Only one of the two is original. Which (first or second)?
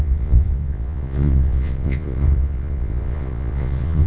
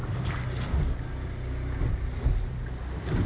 second